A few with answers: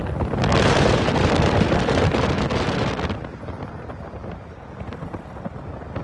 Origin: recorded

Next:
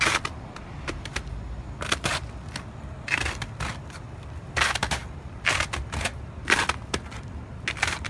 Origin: recorded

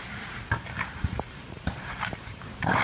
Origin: remade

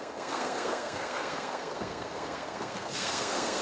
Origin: remade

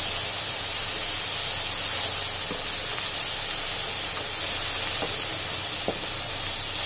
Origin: recorded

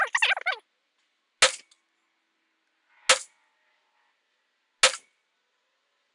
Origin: recorded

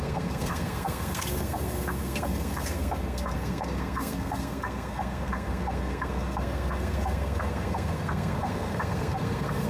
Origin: remade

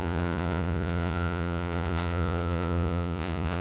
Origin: remade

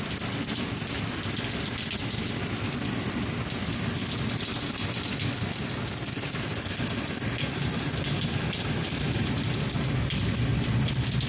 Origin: recorded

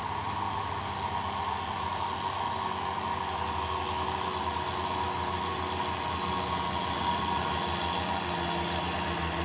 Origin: recorded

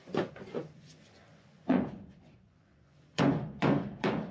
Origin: remade